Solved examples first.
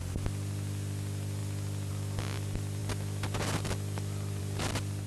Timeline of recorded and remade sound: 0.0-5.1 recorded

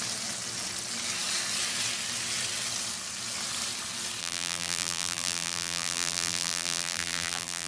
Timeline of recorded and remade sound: 0.0-4.2 recorded; 4.2-7.7 remade

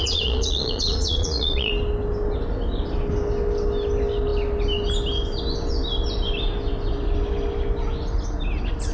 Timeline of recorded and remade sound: 0.0-1.7 remade; 1.7-8.9 recorded

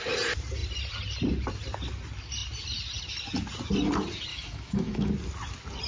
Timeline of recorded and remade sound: 0.0-4.3 recorded; 4.3-5.1 remade; 5.1-5.9 recorded

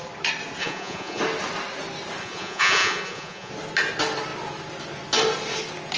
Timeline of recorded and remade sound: 0.0-0.6 recorded; 0.6-1.2 remade; 1.2-2.2 recorded; 2.2-3.5 remade; 3.5-6.0 recorded

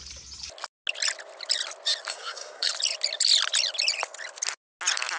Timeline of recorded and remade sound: 0.0-2.1 recorded; 2.1-2.7 remade; 2.7-5.2 recorded